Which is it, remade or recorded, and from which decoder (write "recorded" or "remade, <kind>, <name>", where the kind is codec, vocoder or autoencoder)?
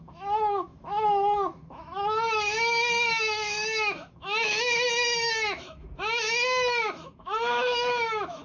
remade, autoencoder, DAC-VAE